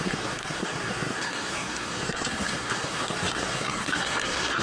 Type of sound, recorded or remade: remade